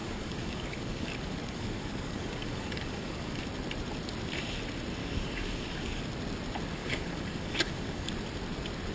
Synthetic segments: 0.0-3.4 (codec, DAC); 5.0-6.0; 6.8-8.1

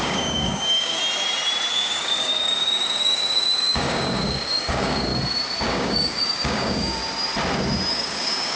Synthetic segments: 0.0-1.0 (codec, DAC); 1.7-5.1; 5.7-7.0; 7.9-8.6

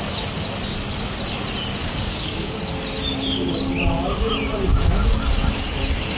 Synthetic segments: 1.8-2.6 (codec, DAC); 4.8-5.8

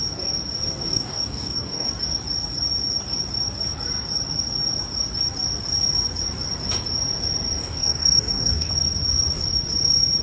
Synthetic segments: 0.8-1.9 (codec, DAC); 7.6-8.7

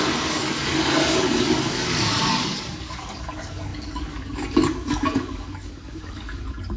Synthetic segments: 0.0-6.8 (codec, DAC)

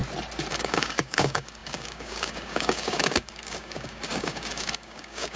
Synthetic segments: 0.5-5.4 (codec, DAC)